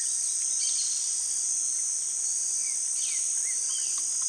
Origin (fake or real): real